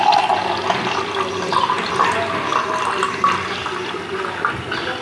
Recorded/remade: recorded